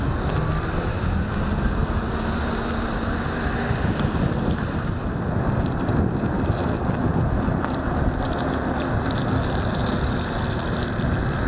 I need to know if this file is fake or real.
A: real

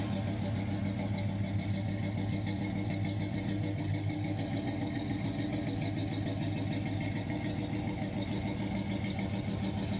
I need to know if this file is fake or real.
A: real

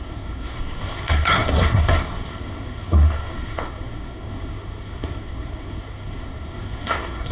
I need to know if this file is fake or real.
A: fake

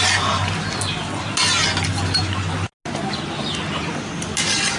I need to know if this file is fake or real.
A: real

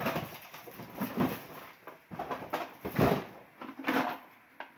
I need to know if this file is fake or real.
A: real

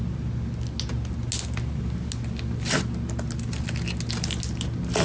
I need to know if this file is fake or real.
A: real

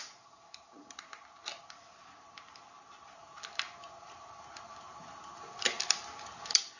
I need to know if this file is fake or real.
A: real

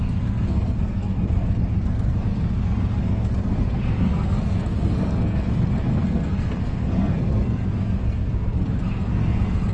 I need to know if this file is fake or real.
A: fake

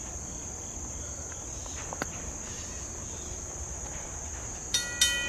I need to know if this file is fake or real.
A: real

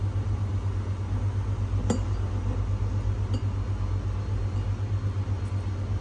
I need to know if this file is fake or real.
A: real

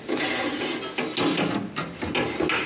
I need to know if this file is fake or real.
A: real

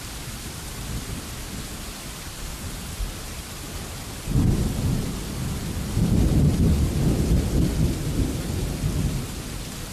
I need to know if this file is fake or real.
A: real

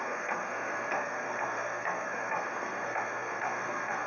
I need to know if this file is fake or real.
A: fake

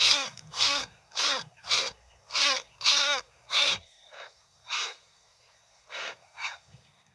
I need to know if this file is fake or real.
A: fake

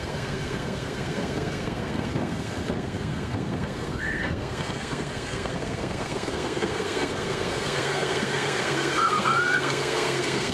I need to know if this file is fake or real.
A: fake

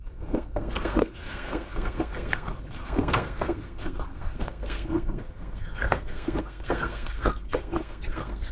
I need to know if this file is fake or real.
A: fake